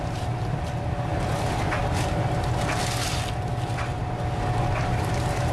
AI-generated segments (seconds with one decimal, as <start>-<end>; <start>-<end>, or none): none